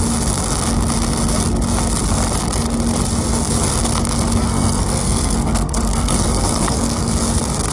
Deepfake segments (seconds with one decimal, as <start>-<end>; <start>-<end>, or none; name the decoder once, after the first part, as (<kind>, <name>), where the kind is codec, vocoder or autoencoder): 4.4-7.1 (codec, SNAC)